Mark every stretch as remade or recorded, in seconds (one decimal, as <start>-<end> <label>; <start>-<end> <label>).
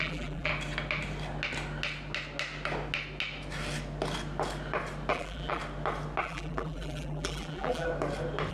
0.0-0.5 remade; 0.5-5.1 recorded; 5.1-5.6 remade; 5.6-6.2 recorded; 6.2-7.9 remade; 7.9-8.5 recorded